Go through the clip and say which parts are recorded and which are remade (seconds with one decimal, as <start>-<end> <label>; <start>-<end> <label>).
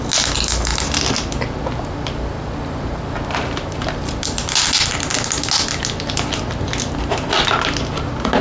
0.0-8.4 recorded